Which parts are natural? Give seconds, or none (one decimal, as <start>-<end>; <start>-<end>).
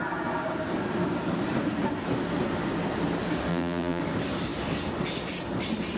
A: 0.0-3.5; 4.0-6.0